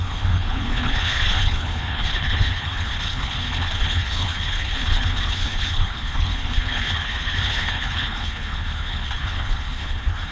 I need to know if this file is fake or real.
fake